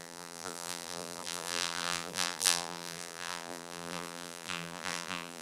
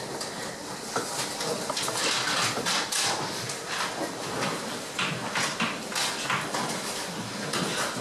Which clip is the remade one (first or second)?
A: first